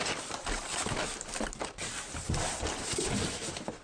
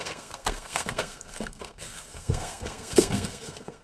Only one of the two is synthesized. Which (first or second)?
second